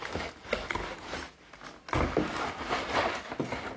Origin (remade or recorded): recorded